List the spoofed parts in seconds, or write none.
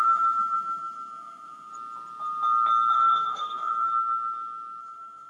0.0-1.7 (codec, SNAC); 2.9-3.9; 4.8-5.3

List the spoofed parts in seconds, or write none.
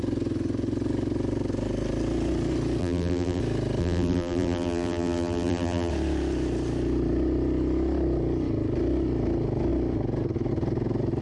2.8-3.4 (vocoder, BigVGAN v2); 3.8-5.9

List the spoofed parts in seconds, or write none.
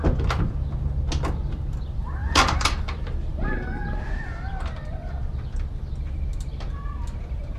2.2-2.8 (vocoder, BigVGAN v2)